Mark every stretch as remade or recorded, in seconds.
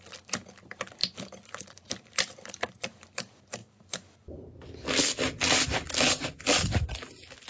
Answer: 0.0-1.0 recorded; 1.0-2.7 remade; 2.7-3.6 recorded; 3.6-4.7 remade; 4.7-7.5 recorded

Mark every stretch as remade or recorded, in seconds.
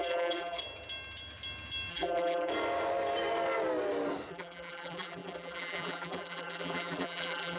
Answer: 0.0-0.6 remade; 0.6-1.9 recorded; 1.9-2.5 remade; 2.5-4.3 recorded; 4.3-7.6 remade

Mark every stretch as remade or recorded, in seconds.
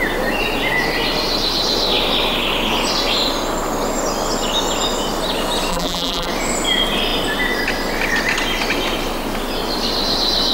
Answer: 0.0-5.7 recorded; 5.7-6.3 remade; 6.3-10.5 recorded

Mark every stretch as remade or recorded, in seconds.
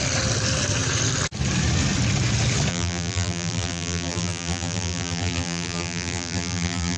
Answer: 0.0-2.7 recorded; 2.7-7.0 remade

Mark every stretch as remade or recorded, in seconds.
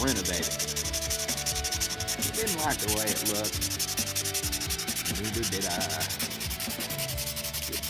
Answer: 0.0-2.7 remade; 2.7-7.4 recorded; 7.4-7.9 remade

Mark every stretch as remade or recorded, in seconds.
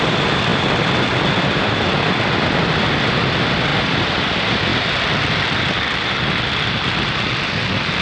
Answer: 0.0-0.5 recorded; 0.5-2.7 remade; 2.7-3.7 recorded; 3.7-4.3 remade; 4.3-4.7 recorded; 4.7-6.4 remade; 6.4-8.0 recorded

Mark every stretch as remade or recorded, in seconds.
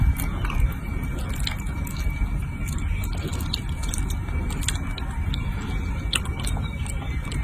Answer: 0.0-7.4 recorded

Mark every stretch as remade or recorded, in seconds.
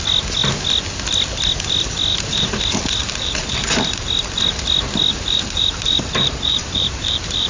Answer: 0.0-2.1 recorded; 2.1-2.6 remade; 2.6-3.0 recorded; 3.0-3.6 remade; 3.6-5.1 recorded; 5.1-7.5 remade